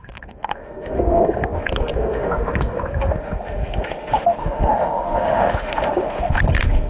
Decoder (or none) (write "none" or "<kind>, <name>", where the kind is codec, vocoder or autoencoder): autoencoder, DAC-VAE